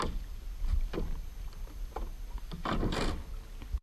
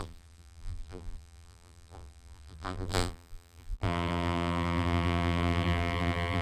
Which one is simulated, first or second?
second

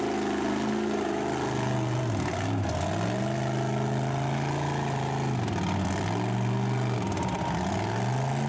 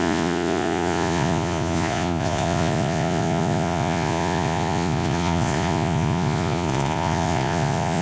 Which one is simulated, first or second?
second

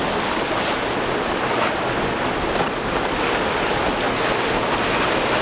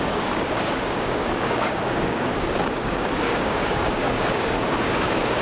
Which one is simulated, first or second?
second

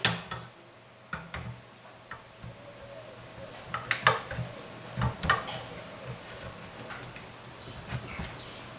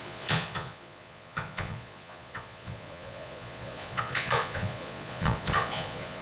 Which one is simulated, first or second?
second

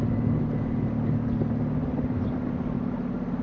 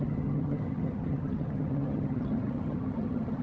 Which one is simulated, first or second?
second